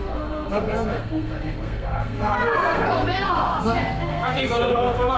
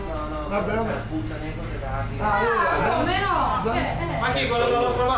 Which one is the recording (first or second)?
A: second